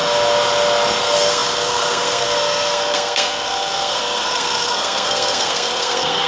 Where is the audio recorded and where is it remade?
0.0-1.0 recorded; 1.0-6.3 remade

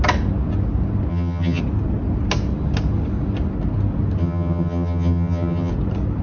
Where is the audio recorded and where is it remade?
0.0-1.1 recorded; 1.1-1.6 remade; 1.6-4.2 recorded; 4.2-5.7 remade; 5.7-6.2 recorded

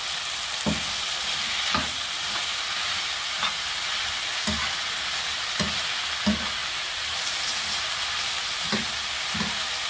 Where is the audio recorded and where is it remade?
0.0-6.6 recorded; 6.6-7.9 remade; 7.9-9.9 recorded